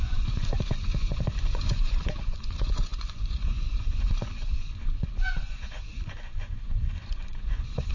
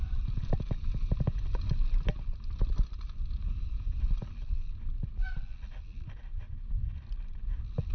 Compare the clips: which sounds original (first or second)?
second